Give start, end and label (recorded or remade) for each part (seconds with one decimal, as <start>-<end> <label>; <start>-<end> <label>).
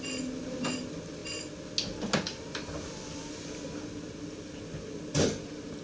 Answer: 0.0-5.8 recorded